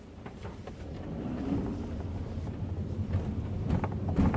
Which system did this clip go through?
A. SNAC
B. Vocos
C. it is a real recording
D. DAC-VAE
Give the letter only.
C